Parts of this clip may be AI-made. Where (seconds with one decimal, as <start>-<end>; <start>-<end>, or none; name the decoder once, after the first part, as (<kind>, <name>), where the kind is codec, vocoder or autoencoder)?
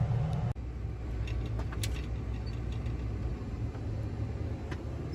none